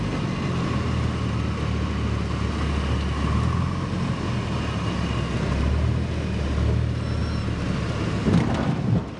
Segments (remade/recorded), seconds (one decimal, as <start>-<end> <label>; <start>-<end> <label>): 0.0-9.2 recorded